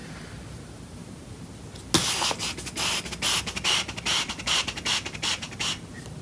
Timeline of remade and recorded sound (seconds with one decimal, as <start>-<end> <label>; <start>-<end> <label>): 0.0-1.4 remade; 1.4-6.2 recorded